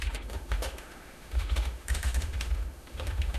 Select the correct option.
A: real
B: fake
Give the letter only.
B